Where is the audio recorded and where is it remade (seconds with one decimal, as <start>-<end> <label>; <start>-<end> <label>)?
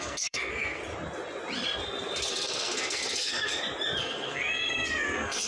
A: 0.0-0.8 remade; 0.8-2.3 recorded; 2.3-3.5 remade; 3.5-4.0 recorded; 4.0-5.5 remade